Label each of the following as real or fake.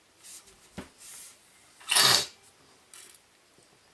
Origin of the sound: real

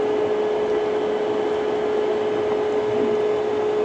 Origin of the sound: real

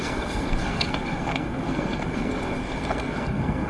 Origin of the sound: fake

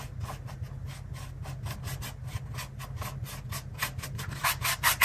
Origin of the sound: real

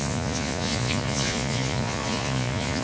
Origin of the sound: fake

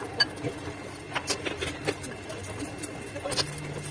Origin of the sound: real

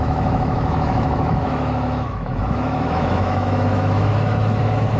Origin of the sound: fake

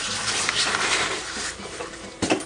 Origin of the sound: fake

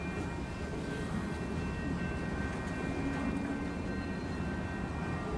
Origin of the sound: real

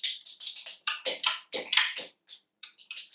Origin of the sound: fake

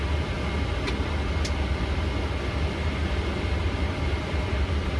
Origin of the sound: real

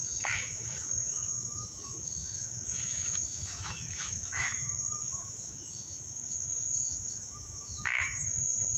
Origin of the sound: fake